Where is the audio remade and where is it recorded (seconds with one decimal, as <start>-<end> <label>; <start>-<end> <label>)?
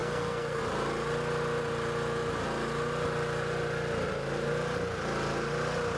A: 0.0-0.6 remade; 0.6-6.0 recorded